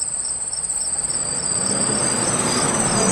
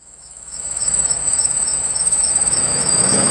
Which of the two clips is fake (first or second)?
second